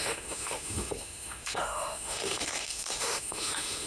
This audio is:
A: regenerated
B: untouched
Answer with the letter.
A